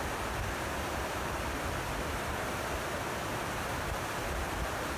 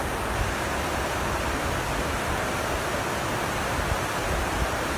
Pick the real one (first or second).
second